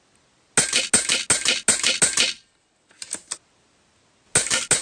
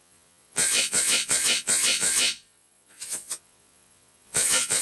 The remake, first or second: second